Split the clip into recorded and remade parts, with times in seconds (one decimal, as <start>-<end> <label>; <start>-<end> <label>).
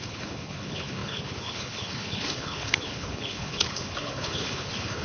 0.0-5.0 remade